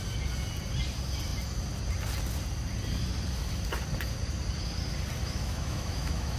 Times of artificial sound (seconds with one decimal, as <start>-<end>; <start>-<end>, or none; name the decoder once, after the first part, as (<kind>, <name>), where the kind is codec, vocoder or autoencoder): 5.2-6.4 (autoencoder, DAC-VAE)